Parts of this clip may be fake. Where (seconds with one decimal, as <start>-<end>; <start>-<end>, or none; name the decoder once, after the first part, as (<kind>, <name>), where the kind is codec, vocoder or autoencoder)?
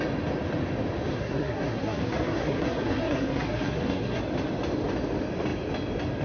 1.1-4.2 (codec, SNAC)